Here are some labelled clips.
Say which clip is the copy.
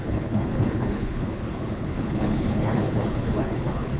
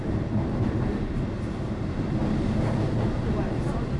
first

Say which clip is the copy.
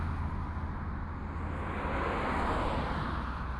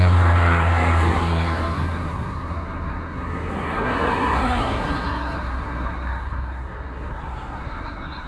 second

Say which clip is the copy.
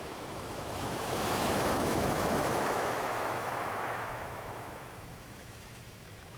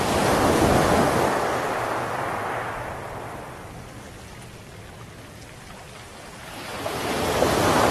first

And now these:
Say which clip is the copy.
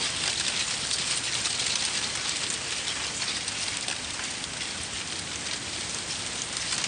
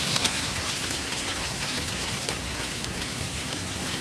second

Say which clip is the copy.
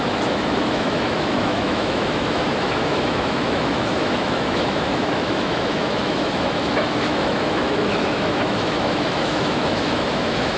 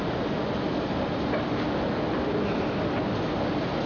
first